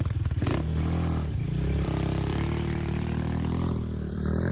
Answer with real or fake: fake